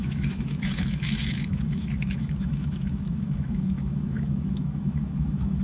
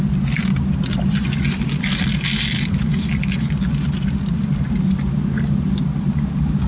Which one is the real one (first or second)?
second